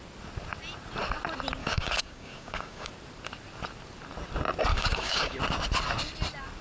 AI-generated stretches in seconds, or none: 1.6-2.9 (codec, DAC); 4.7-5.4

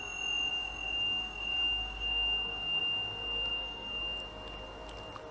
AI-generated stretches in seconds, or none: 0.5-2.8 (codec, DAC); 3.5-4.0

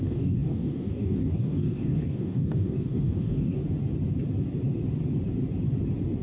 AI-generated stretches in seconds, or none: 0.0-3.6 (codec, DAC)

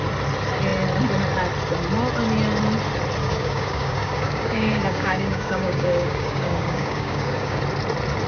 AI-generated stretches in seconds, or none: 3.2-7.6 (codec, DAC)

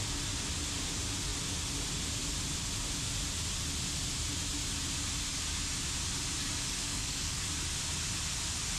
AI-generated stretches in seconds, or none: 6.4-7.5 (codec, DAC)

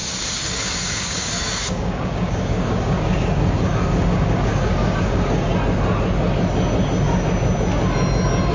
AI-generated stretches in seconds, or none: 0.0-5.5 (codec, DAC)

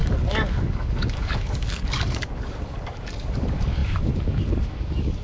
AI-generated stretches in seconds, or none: 0.0-5.2 (codec, DAC)